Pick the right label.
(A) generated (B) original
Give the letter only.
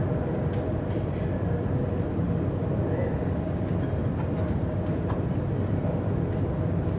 B